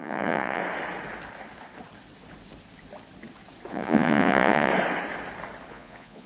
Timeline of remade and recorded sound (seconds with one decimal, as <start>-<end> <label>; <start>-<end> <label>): 0.0-0.6 remade; 0.6-3.7 recorded; 3.7-4.7 remade; 4.7-5.7 recorded; 5.7-6.3 remade